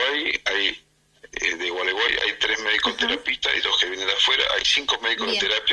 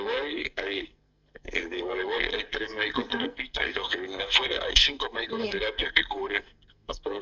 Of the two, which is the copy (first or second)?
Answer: second